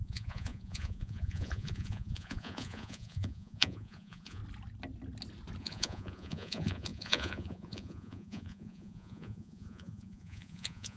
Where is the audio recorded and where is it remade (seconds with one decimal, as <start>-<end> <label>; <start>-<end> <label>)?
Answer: 0.0-4.4 remade; 4.4-5.6 recorded; 5.6-11.0 remade